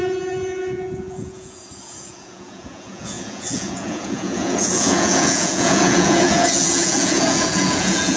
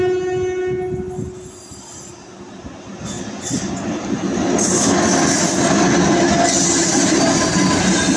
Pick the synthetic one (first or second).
first